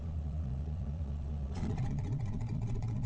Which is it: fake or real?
fake